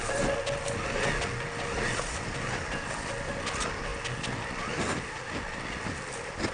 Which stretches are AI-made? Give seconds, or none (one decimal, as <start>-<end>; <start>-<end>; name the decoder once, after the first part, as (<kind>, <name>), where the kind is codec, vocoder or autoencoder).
none